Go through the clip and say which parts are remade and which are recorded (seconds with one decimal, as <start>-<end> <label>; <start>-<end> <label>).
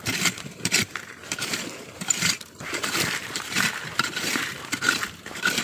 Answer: 0.0-5.6 remade